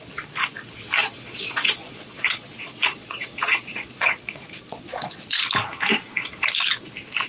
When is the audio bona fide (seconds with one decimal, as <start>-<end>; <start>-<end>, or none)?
0.0-1.0; 5.4-7.3